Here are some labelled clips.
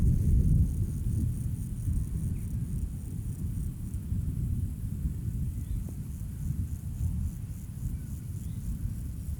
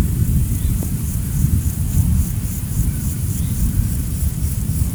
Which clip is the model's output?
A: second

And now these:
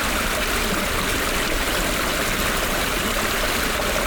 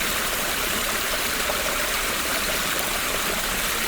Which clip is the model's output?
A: second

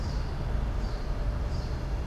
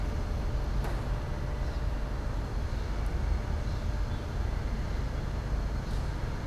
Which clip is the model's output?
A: first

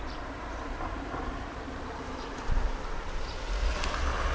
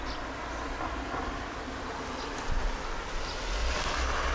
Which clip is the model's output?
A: first